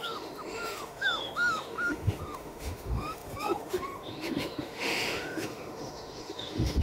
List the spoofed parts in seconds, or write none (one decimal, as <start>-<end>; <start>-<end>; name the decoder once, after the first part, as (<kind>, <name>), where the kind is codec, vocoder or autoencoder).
0.0-6.8 (autoencoder, DAC-VAE)